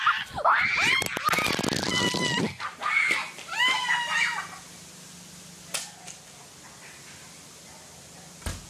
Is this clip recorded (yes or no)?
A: yes